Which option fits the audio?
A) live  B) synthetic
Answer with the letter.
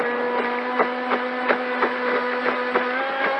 A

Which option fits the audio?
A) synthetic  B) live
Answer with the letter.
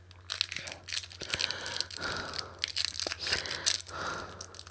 B